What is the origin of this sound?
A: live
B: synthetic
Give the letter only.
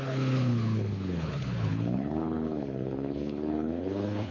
B